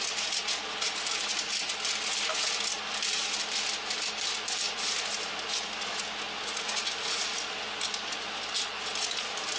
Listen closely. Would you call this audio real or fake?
real